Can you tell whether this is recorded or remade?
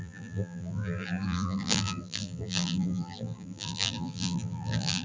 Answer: remade